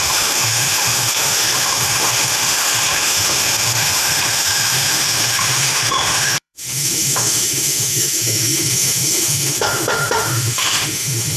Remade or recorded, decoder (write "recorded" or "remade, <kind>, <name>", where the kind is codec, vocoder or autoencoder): remade, autoencoder, DAC-VAE